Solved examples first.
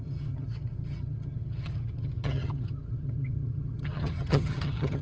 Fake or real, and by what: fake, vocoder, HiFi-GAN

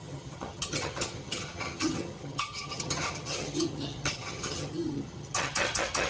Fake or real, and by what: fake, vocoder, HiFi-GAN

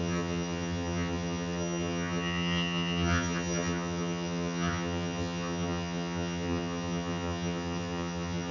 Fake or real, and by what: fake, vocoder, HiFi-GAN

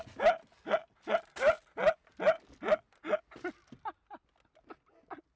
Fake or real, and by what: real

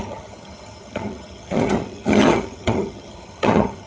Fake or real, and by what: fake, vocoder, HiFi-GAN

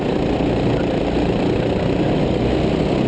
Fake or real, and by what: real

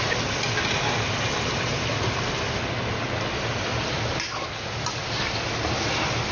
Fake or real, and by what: real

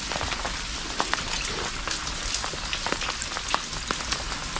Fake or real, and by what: real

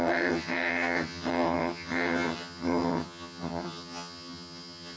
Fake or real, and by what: fake, vocoder, HiFi-GAN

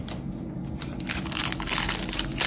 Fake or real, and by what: real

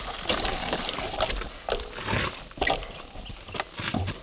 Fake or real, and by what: real